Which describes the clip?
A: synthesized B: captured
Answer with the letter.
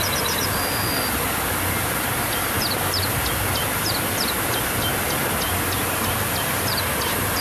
B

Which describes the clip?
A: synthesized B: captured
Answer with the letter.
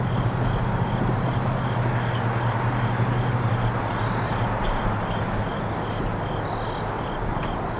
B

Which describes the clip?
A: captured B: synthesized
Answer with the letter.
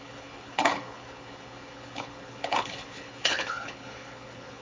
B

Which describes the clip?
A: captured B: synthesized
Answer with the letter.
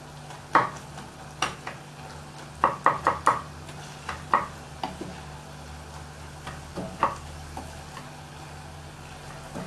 A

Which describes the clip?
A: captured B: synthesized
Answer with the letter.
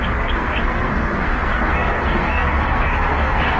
B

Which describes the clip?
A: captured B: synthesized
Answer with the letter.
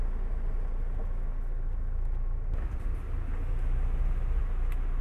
A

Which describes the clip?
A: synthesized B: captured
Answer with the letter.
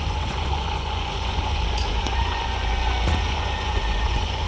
A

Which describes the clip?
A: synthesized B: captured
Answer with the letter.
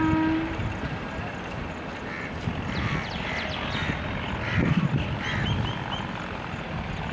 B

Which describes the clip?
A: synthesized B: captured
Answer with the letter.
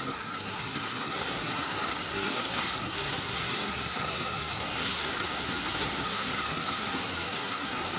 A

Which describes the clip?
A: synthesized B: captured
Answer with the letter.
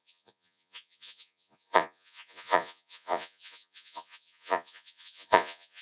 A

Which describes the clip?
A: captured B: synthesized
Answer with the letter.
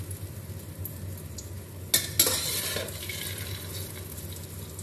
A